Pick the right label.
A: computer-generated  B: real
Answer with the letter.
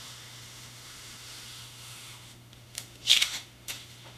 A